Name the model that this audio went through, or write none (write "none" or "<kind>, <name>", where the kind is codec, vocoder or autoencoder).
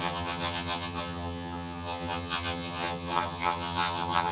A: vocoder, HiFi-GAN